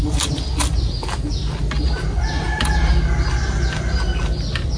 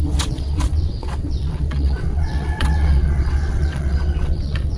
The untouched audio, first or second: first